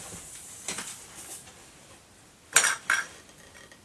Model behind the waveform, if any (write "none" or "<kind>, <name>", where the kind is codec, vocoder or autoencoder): none